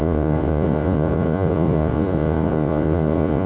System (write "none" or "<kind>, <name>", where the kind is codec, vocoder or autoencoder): vocoder, Vocos